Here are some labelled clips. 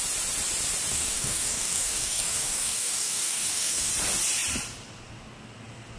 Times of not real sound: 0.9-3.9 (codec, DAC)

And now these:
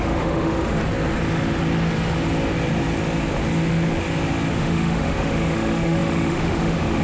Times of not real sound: 0.0-0.8 (autoencoder, DAC-VAE); 4.5-7.0

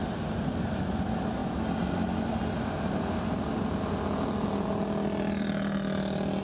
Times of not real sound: none

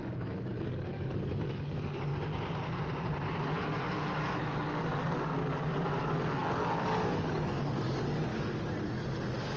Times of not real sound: 0.0-2.1 (codec, DAC); 4.8-5.3; 6.0-8.3

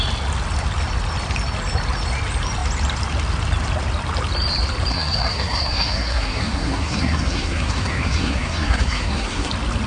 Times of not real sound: 4.9-9.5 (codec, SNAC)